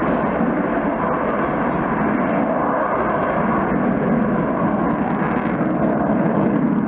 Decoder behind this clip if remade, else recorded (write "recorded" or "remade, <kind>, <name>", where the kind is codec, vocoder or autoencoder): recorded